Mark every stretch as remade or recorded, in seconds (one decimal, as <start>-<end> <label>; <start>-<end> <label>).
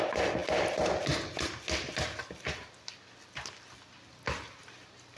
0.0-5.2 recorded